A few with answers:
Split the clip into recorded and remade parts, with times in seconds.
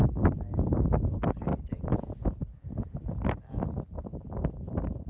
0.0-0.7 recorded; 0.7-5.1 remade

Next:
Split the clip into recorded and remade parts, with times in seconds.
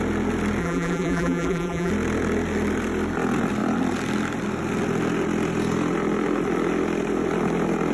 0.0-0.6 recorded; 0.6-1.9 remade; 1.9-7.9 recorded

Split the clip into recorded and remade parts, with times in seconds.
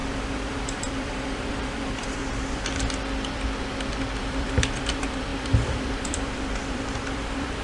0.0-2.2 remade; 2.2-4.2 recorded; 4.2-7.6 remade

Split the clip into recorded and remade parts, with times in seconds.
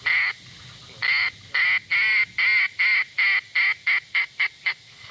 0.0-5.1 recorded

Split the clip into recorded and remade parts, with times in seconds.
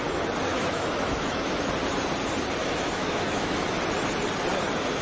0.0-0.5 recorded; 0.5-1.6 remade; 1.6-2.6 recorded; 2.6-3.8 remade; 3.8-5.0 recorded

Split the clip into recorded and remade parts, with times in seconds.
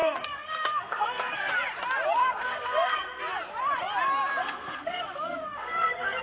0.0-1.5 remade; 1.5-2.2 recorded; 2.2-3.2 remade; 3.2-4.4 recorded; 4.4-6.2 remade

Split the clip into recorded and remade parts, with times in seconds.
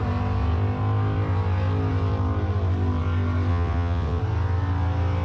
0.0-3.5 recorded; 3.5-4.2 remade; 4.2-5.2 recorded